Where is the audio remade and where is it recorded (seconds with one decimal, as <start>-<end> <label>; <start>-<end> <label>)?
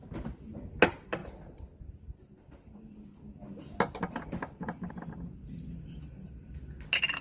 0.0-7.2 recorded